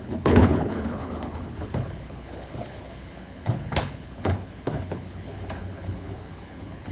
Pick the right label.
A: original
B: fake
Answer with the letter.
B